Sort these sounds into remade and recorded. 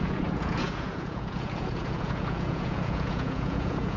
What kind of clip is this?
remade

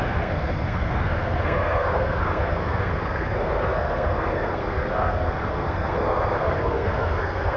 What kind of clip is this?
remade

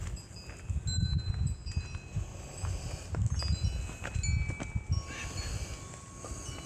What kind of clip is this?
recorded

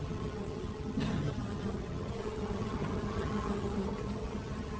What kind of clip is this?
remade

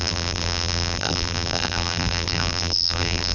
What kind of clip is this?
remade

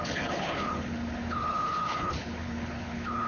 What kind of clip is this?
remade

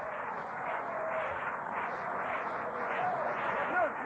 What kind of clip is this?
remade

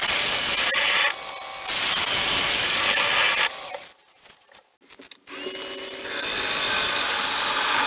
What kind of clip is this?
recorded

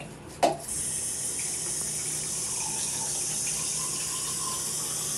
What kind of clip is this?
recorded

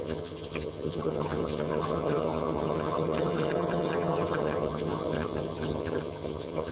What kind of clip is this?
remade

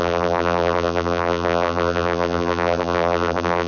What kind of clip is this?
remade